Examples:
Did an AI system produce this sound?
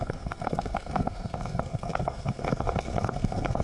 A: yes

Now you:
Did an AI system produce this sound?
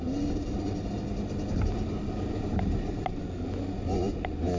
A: no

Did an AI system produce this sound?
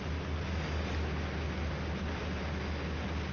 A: no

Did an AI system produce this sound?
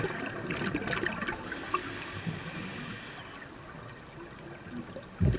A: no